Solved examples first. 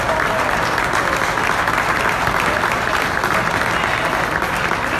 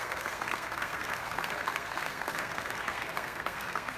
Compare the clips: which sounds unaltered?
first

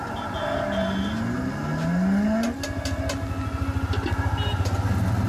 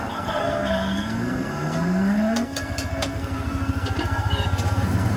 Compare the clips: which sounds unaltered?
first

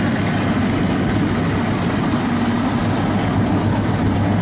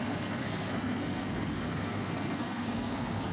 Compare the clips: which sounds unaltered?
first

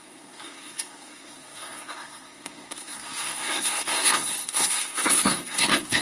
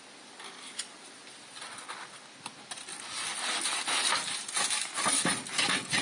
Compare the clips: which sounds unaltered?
second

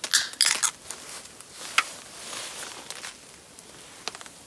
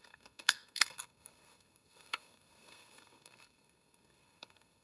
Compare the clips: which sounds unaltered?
first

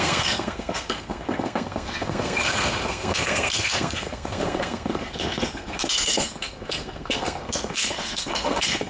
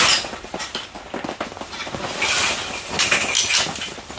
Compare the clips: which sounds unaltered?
second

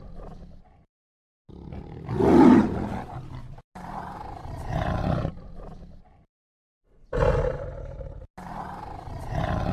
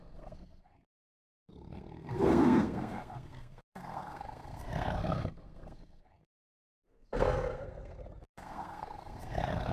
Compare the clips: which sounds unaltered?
first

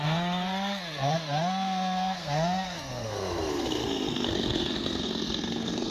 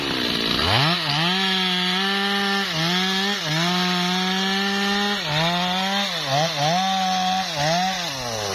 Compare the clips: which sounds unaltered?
second